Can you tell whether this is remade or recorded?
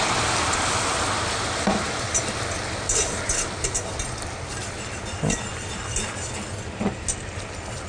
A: recorded